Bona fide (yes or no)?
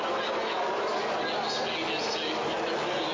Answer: yes